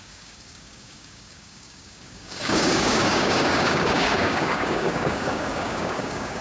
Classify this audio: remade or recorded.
remade